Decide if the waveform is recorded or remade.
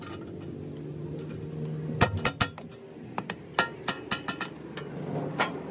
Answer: recorded